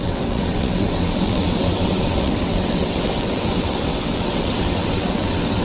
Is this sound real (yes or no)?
no